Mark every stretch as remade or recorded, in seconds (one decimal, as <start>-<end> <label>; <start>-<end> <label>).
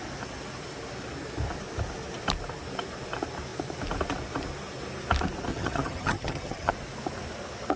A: 0.0-5.5 recorded; 5.5-6.7 remade; 6.7-7.8 recorded